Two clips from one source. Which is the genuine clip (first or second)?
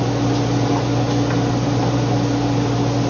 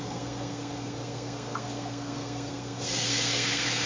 first